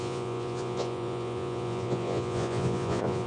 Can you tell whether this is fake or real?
fake